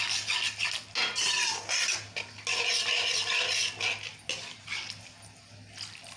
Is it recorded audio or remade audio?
recorded